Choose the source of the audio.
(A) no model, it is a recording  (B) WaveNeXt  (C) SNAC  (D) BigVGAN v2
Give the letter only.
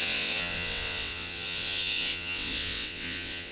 B